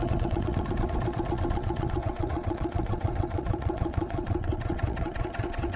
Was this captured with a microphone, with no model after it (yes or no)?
no